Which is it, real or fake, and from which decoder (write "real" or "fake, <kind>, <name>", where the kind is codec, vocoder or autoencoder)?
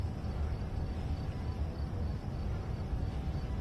fake, vocoder, BigVGAN v2